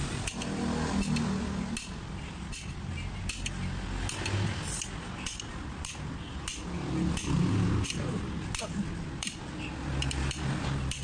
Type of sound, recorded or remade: recorded